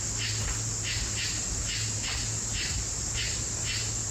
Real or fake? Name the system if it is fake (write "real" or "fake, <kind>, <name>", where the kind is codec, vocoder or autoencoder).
real